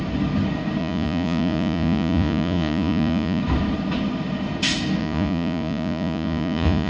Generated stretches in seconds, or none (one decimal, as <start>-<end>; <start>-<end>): 0.8-3.4; 5.0-6.9